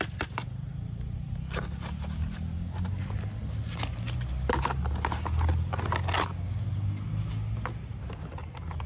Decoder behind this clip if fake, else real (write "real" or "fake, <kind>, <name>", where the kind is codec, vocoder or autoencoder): real